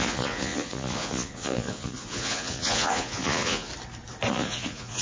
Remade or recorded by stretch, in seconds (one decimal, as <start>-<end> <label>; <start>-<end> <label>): 0.0-3.7 remade; 3.7-4.3 recorded; 4.3-5.0 remade

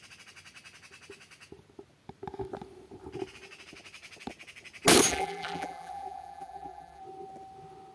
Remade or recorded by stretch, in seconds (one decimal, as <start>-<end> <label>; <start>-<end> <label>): 0.0-5.1 recorded; 5.1-7.0 remade; 7.0-7.9 recorded